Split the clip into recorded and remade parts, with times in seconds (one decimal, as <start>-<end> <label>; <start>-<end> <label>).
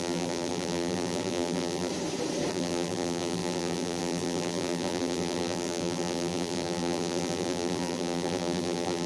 0.0-1.9 remade; 1.9-2.5 recorded; 2.5-9.1 remade